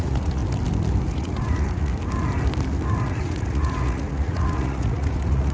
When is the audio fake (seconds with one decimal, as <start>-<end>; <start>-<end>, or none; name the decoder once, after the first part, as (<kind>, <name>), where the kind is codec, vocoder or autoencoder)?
0.0-0.4 (vocoder, Vocos); 1.1-1.9; 3.1-5.5